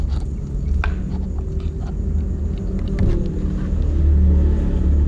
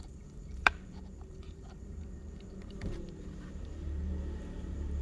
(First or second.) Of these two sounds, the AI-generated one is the second